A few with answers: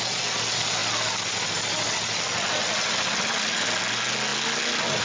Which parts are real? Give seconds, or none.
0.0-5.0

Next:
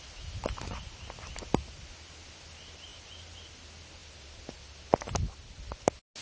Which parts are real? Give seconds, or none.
0.0-6.2

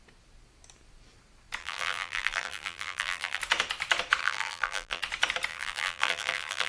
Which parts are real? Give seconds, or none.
0.0-1.6; 3.4-4.2; 5.0-5.5

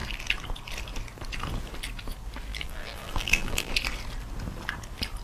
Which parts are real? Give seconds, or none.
0.0-2.5; 3.7-5.2

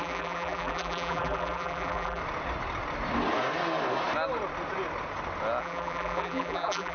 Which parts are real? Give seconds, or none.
2.2-5.6